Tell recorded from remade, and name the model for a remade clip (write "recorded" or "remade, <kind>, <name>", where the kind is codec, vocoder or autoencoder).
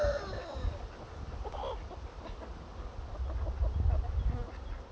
recorded